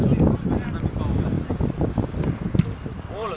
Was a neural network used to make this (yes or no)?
no